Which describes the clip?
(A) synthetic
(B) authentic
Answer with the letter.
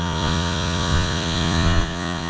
A